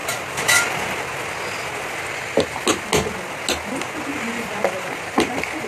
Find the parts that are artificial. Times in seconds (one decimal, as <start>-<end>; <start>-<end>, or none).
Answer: none